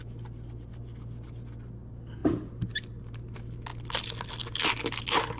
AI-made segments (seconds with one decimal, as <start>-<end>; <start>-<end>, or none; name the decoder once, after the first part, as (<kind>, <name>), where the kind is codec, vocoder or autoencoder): none